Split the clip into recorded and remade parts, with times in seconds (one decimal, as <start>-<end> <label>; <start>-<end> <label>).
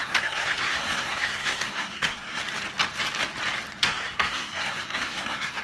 0.0-2.4 remade; 2.4-3.8 recorded; 3.8-5.6 remade